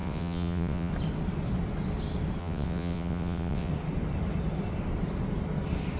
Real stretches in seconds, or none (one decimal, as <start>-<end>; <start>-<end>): 0.9-2.4; 3.7-6.0